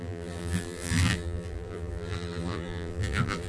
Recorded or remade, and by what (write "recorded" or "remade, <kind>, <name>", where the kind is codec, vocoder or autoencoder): remade, vocoder, BigVGAN v2